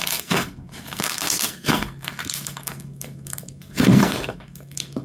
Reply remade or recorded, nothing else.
remade